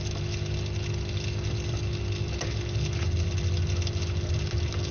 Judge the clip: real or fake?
real